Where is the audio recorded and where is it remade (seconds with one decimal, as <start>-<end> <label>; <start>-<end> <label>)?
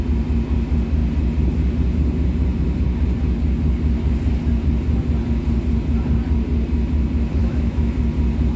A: 0.0-7.4 recorded; 7.4-8.0 remade; 8.0-8.6 recorded